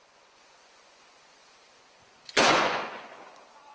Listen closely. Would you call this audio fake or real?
fake